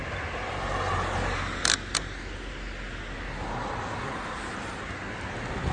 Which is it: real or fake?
real